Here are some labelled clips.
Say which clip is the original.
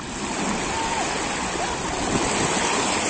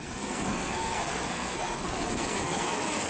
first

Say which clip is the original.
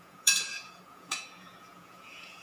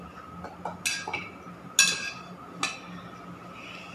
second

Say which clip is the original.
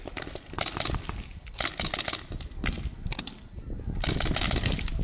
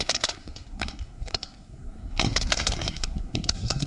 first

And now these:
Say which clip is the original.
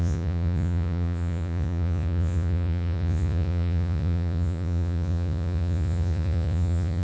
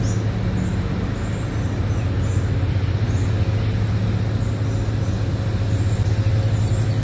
second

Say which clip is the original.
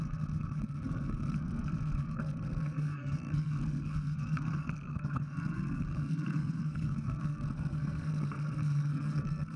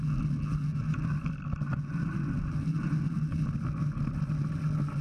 second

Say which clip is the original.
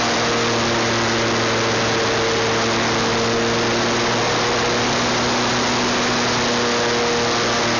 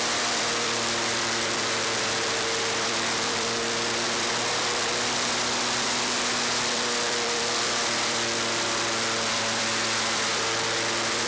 first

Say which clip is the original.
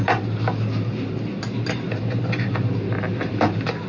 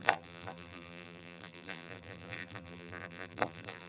first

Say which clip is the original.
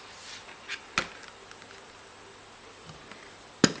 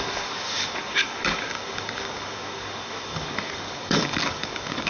first